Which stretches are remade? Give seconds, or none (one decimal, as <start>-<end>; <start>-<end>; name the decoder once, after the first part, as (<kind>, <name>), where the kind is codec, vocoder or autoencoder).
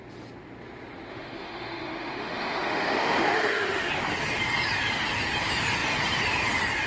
1.1-3.9 (autoencoder, DAC-VAE)